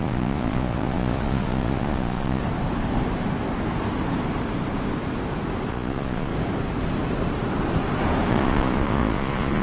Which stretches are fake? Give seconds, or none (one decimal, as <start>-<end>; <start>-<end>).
0.0-2.4; 5.7-6.3; 8.3-9.6